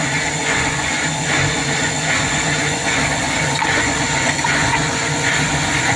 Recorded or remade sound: remade